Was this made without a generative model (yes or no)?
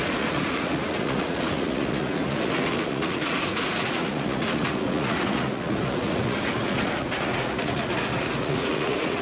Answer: no